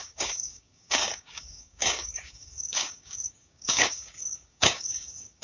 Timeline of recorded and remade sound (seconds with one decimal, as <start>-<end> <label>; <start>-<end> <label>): 0.0-5.4 remade

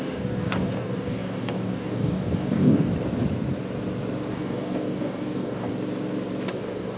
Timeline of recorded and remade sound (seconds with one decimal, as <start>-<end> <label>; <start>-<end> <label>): 0.0-2.9 remade; 2.9-4.3 recorded; 4.3-5.7 remade; 5.7-6.5 recorded; 6.5-7.0 remade

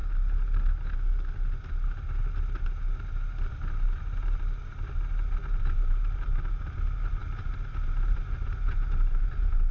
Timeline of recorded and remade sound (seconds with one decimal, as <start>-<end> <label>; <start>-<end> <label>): 0.0-9.7 recorded

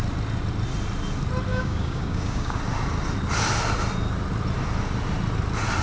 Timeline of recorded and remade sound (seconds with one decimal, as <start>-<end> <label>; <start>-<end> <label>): 0.0-1.5 recorded; 1.5-2.6 remade; 2.6-5.8 recorded

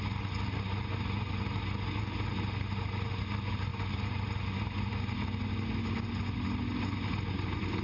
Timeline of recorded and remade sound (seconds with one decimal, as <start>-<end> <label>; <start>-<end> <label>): 0.0-7.8 recorded